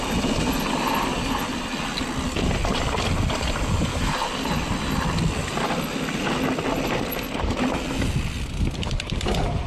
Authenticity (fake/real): real